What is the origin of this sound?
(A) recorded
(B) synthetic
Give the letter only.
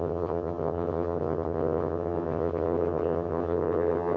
B